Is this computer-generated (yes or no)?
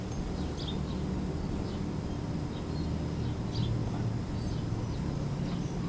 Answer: no